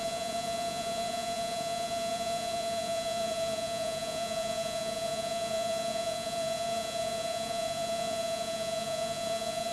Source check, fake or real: fake